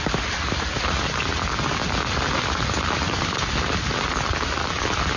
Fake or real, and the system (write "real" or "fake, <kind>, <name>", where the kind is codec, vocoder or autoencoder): real